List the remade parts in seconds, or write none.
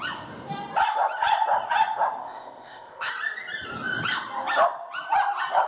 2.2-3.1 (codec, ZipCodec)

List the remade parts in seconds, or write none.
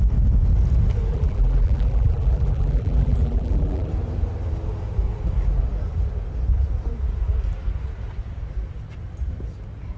1.1-3.9 (vocoder, BigVGAN v2)